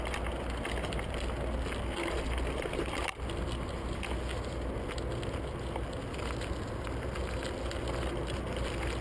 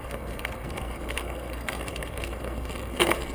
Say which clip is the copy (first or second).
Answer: second